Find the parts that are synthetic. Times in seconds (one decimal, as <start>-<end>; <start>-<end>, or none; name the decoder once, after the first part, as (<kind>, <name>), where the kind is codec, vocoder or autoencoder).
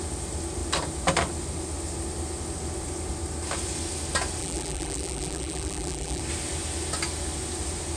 4.4-6.2 (vocoder, BigVGAN v2)